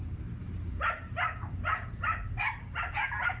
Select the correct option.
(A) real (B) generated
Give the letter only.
A